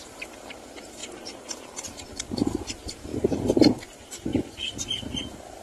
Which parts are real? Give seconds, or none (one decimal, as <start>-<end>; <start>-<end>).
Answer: none